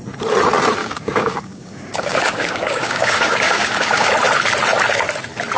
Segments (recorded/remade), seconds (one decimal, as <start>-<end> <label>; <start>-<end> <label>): 0.0-0.8 recorded; 0.8-4.1 remade; 4.1-5.6 recorded